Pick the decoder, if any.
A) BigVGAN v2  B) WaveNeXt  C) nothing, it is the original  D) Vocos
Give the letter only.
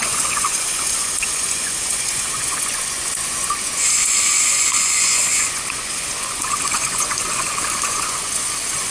D